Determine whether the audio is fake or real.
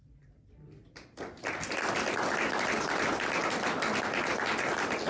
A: real